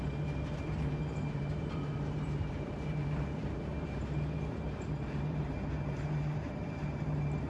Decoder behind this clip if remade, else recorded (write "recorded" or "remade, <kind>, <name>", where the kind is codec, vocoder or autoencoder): remade, vocoder, BigVGAN v2